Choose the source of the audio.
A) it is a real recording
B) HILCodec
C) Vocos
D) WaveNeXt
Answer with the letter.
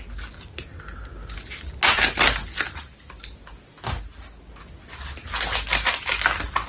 A